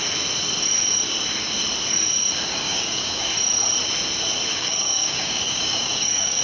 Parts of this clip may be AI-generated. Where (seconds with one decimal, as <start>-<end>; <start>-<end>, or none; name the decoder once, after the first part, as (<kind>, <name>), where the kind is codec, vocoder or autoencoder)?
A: 2.5-3.3 (codec, DAC); 4.5-6.4